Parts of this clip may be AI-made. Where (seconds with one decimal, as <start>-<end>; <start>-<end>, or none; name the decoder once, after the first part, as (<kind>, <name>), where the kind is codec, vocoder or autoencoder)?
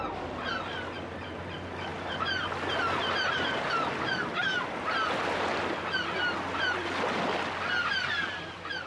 none